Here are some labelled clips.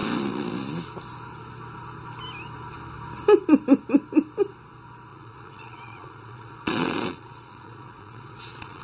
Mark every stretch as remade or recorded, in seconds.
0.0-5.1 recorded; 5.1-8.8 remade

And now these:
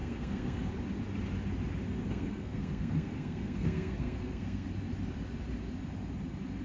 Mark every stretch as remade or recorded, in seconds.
0.0-0.7 remade; 0.7-2.0 recorded; 2.0-4.7 remade; 4.7-6.6 recorded

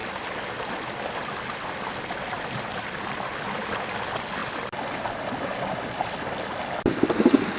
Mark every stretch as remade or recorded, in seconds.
0.0-7.6 recorded

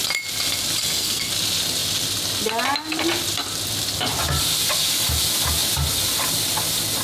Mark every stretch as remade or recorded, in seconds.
0.0-0.8 recorded; 0.8-1.3 remade; 1.3-7.0 recorded